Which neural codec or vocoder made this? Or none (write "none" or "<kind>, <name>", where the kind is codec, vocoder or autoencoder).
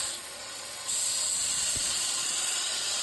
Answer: vocoder, Vocos